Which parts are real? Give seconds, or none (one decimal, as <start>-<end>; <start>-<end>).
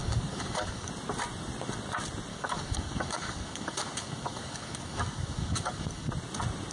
0.9-2.3; 6.1-6.7